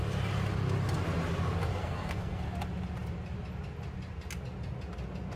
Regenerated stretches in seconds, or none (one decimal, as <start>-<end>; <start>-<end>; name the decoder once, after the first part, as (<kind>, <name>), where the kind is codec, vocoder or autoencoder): 1.8-2.4 (codec, SNAC)